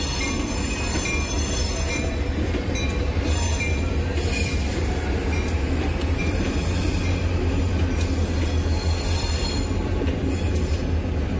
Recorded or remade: recorded